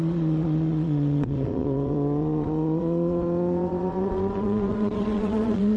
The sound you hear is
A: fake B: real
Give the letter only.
A